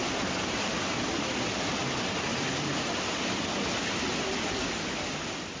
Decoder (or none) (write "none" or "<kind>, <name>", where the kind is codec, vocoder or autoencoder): none